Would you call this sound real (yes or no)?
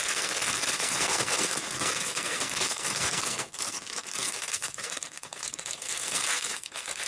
no